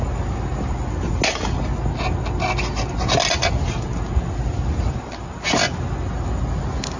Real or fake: real